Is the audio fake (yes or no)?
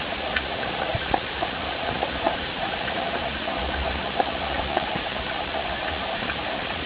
yes